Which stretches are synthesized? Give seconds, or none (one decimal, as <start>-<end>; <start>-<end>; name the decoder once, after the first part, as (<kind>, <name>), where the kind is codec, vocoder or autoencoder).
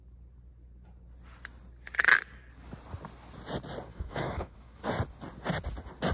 3.9-4.9 (autoencoder, DAC-VAE)